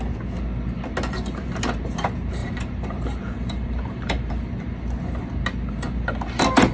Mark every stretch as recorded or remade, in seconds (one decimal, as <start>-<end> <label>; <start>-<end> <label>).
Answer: 0.0-2.4 recorded; 2.4-4.3 remade; 4.3-6.7 recorded